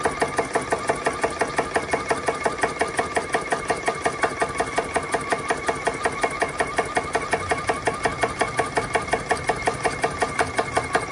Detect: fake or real real